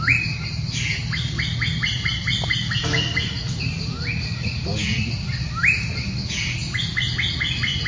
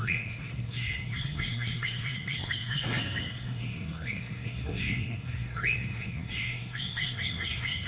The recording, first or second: first